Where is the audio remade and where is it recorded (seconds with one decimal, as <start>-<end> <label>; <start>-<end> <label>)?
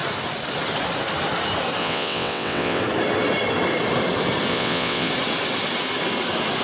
0.0-1.8 recorded; 1.8-2.8 remade; 2.8-4.5 recorded; 4.5-5.1 remade; 5.1-6.6 recorded